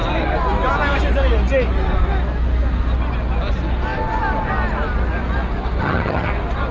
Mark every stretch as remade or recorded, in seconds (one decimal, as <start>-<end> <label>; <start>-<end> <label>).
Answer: 0.0-5.8 recorded; 5.8-6.3 remade; 6.3-6.7 recorded

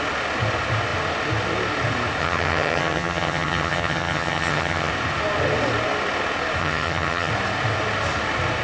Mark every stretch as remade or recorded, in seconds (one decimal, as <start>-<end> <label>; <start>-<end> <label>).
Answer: 0.0-2.2 recorded; 2.2-4.9 remade; 4.9-6.6 recorded; 6.6-7.3 remade; 7.3-8.6 recorded

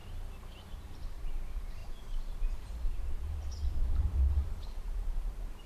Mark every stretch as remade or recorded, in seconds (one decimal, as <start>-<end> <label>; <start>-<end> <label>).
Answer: 0.0-0.7 recorded; 0.7-5.7 remade

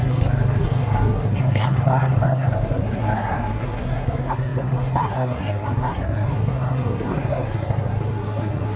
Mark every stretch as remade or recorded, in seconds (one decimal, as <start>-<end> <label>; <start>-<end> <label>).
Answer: 0.0-8.8 remade

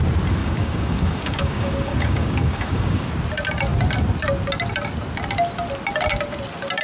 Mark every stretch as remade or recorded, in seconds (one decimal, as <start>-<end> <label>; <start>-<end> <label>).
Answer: 0.0-0.4 recorded; 0.4-3.1 remade; 3.1-6.8 recorded